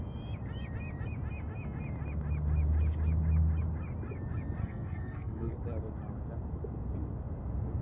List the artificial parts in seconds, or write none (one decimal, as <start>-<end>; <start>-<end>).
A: 4.6-5.5